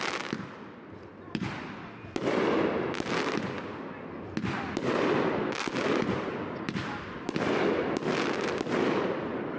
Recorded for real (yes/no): yes